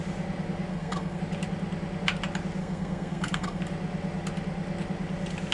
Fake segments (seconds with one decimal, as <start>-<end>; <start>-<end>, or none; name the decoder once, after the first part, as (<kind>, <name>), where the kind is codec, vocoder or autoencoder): 0.7-1.2 (codec, SNAC); 2.6-3.6